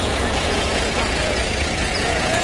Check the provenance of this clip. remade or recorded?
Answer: remade